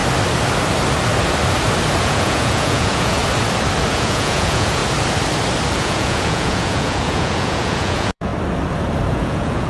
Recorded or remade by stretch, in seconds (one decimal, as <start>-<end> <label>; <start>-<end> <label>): 0.0-2.0 recorded; 2.0-3.2 remade; 3.2-3.9 recorded; 3.9-4.8 remade; 4.8-5.8 recorded; 5.8-8.3 remade; 8.3-9.1 recorded; 9.1-9.7 remade

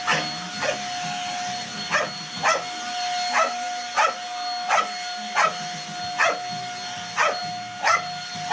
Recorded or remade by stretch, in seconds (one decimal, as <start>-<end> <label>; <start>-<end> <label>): 0.0-8.5 recorded